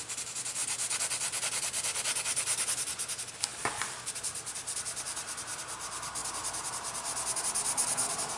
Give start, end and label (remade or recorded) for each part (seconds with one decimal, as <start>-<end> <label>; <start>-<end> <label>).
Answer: 0.0-3.5 recorded; 3.5-5.6 remade; 5.6-8.4 recorded